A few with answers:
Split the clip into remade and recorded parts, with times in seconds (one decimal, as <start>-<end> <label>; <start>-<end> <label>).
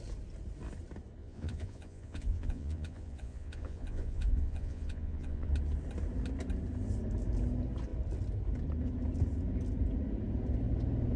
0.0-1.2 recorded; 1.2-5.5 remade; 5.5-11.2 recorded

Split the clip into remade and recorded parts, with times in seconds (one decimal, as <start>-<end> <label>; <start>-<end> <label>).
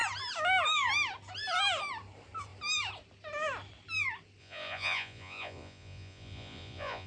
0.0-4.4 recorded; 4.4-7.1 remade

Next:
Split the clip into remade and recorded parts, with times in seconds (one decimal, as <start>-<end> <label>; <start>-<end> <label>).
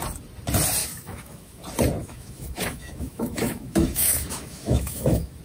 0.0-0.8 recorded; 0.8-1.6 remade; 1.6-2.0 recorded; 2.0-5.4 remade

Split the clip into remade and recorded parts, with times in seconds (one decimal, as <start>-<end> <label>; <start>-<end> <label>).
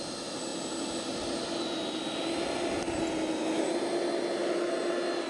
0.0-5.3 recorded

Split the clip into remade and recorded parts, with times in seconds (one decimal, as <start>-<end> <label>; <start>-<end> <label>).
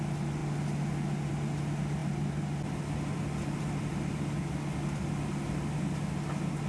0.0-6.7 recorded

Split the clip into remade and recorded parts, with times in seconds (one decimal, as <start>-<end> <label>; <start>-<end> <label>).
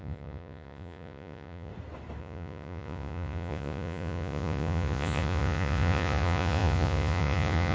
0.0-1.7 remade; 1.7-2.2 recorded; 2.2-7.7 remade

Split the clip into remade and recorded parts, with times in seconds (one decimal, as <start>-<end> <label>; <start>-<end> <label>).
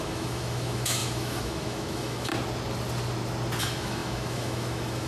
0.0-2.3 remade; 2.3-3.6 recorded; 3.6-5.1 remade